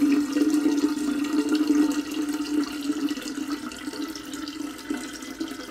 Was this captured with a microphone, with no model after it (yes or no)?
yes